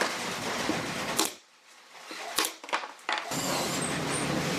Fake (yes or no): no